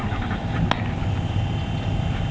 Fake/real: real